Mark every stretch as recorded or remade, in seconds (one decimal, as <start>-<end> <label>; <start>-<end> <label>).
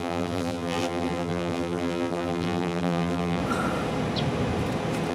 0.0-3.4 remade; 3.4-5.1 recorded